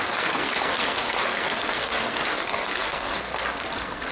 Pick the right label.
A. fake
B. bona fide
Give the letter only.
A